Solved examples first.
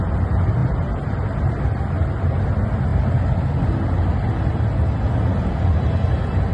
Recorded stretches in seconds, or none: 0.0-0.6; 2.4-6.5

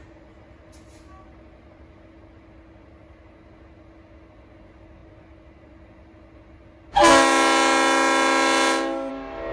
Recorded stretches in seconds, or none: 0.0-9.5